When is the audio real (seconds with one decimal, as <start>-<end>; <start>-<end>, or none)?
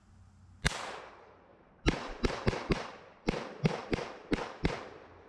0.0-1.5; 3.0-3.8; 4.7-5.3